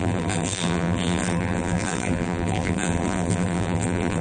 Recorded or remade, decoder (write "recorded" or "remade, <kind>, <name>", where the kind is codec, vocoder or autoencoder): remade, vocoder, BigVGAN v2